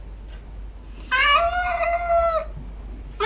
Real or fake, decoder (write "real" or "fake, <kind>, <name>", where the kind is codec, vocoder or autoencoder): real